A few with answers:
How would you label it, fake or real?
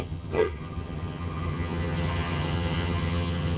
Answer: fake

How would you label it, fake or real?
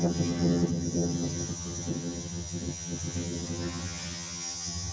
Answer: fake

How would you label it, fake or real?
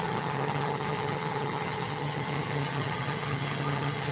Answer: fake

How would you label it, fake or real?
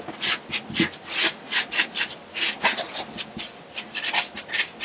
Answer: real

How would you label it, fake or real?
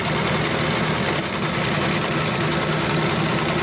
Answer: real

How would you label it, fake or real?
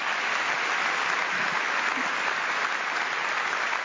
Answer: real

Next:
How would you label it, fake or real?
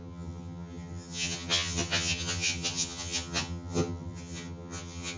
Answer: fake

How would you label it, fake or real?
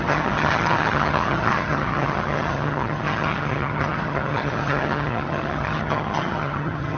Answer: fake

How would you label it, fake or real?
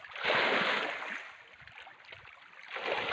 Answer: real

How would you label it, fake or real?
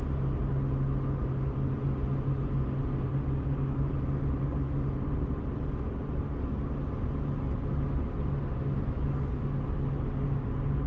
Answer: real